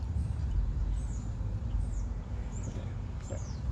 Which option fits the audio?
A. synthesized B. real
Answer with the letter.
A